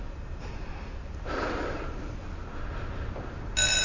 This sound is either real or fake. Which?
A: real